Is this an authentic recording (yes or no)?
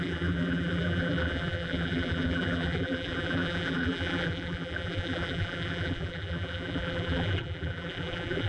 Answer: no